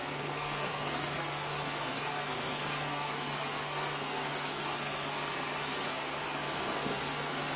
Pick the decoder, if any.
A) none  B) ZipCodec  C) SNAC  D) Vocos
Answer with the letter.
C